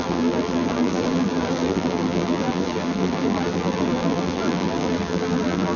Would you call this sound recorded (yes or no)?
no